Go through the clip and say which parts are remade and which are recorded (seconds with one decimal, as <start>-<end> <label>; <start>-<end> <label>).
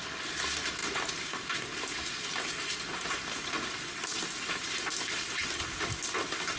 0.0-6.6 recorded